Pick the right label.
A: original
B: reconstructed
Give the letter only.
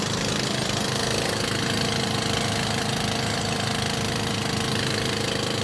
A